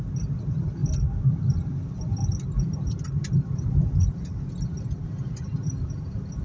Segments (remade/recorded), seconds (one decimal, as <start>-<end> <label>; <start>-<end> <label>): 0.0-6.4 recorded